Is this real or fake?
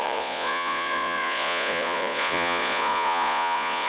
fake